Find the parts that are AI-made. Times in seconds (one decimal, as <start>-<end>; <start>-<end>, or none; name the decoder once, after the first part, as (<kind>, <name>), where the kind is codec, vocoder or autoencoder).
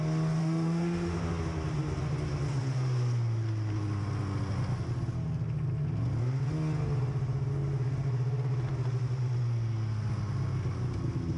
0.4-1.2 (autoencoder, DAC-VAE)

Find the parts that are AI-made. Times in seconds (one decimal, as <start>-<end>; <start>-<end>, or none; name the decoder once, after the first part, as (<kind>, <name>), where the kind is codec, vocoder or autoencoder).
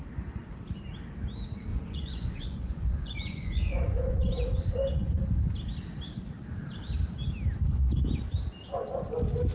1.7-4.3 (vocoder, Vocos)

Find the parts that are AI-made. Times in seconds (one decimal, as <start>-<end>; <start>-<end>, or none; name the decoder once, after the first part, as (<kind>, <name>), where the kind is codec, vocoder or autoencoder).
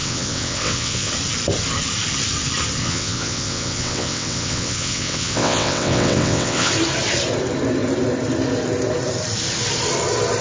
0.0-1.1 (vocoder, WaveNeXt); 2.8-6.7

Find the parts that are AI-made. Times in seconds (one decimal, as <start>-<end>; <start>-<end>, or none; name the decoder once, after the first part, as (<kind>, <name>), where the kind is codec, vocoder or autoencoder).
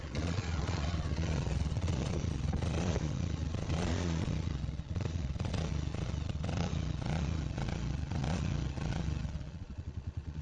0.0-10.4 (vocoder, Vocos)